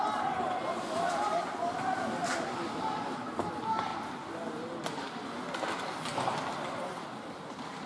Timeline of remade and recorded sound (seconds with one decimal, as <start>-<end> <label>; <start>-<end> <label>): 0.0-7.9 recorded